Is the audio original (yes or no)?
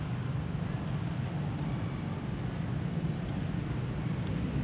yes